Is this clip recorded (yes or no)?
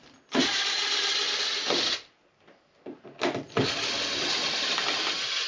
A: yes